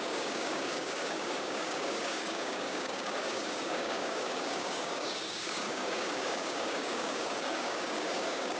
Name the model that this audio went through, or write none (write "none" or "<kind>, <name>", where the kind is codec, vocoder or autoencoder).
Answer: codec, DAC